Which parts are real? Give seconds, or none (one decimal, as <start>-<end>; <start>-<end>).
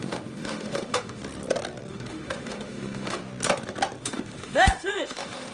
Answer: 1.2-1.9; 3.2-4.0